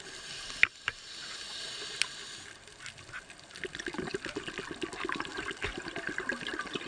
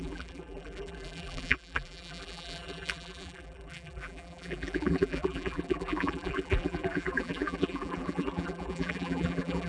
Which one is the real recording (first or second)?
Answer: first